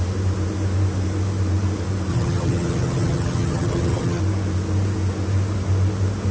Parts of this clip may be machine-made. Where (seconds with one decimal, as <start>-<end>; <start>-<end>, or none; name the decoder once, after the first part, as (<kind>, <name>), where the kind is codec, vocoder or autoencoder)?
2.1-4.2 (vocoder, HiFi-GAN)